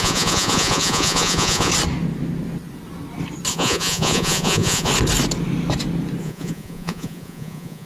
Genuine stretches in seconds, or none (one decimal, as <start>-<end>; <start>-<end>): 1.7-3.5; 4.9-6.2